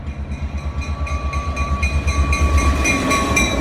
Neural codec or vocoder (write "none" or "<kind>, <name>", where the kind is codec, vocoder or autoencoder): vocoder, BigVGAN v2